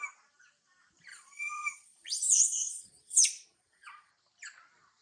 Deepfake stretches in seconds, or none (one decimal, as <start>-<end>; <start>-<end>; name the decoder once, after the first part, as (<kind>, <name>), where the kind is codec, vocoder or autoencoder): 1.1-4.1 (vocoder, Vocos)

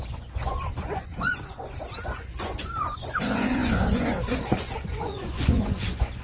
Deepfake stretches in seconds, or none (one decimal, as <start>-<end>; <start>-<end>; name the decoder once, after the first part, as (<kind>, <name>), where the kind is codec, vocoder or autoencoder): 0.0-6.2 (vocoder, Vocos)

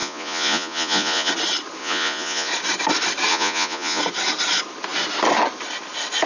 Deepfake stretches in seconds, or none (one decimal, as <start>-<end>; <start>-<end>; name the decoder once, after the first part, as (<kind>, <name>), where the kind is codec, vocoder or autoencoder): 0.0-1.3 (vocoder, Vocos); 1.8-2.5; 3.3-4.0

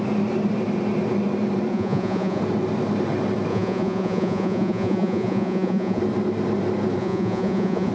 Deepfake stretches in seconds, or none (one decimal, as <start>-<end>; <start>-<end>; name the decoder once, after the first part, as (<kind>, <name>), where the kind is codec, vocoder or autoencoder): 1.7-2.4 (vocoder, Vocos); 3.5-6.0; 7.0-7.9